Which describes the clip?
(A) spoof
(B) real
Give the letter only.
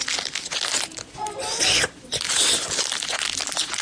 B